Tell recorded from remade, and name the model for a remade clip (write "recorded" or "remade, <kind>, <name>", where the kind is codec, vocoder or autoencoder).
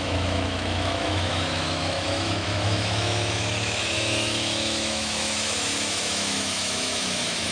remade, autoencoder, DAC-VAE